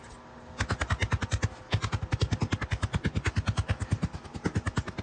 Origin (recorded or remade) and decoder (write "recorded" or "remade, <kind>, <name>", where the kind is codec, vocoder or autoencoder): recorded